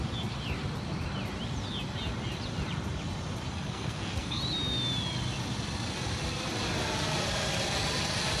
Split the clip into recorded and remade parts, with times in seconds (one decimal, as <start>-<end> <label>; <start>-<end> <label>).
0.0-3.5 recorded; 3.5-4.4 remade; 4.4-8.4 recorded